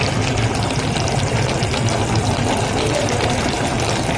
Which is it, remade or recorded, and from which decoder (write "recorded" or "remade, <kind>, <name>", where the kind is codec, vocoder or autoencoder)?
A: recorded